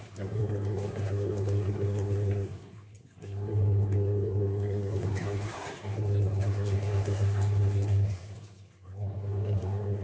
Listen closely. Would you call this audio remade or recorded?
remade